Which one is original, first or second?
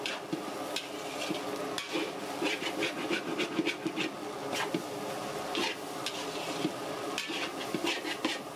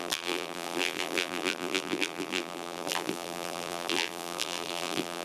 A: first